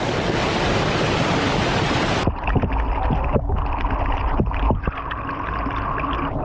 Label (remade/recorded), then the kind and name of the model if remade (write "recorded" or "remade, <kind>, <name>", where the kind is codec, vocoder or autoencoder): recorded